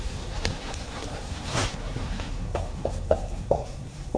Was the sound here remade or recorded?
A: remade